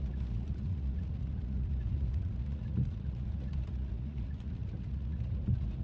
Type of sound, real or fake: fake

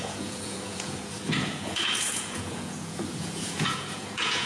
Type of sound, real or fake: fake